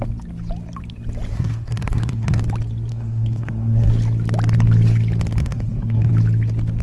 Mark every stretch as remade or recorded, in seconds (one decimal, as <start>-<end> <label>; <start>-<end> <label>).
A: 0.0-1.3 recorded; 1.3-2.4 remade; 2.4-2.9 recorded; 2.9-3.9 remade; 3.9-5.4 recorded; 5.4-6.1 remade; 6.1-6.8 recorded